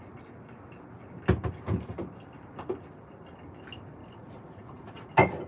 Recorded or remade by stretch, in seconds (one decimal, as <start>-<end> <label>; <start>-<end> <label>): 0.0-4.0 recorded; 4.0-5.1 remade; 5.1-5.5 recorded